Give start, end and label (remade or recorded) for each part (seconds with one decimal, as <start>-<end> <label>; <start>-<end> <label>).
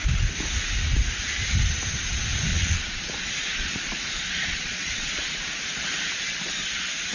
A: 0.0-2.5 recorded; 2.5-5.2 remade; 5.2-7.1 recorded